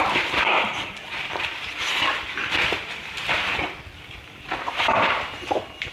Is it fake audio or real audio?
fake